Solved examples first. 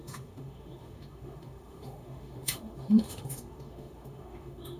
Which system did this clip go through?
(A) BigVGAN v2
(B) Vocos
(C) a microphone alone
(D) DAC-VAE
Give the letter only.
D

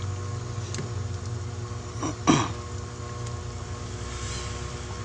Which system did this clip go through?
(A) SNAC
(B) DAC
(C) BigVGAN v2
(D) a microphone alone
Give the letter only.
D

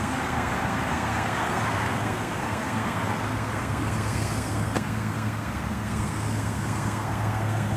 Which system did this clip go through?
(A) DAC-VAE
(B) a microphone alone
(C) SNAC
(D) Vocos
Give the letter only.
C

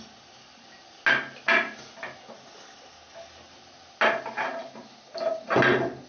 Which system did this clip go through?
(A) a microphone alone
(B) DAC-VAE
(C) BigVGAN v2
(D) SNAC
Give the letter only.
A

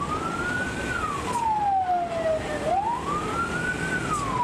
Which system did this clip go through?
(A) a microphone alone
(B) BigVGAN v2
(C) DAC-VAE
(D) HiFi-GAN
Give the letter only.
A